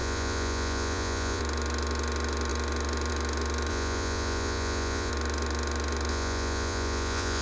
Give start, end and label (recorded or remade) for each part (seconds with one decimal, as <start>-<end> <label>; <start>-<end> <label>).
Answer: 0.0-1.4 remade; 1.4-3.7 recorded; 3.7-5.1 remade; 5.1-6.1 recorded; 6.1-7.4 remade